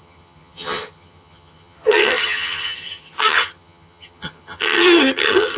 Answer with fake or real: fake